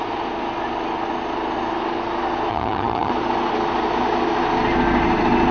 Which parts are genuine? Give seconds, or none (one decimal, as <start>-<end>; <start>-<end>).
0.0-2.5; 3.1-5.5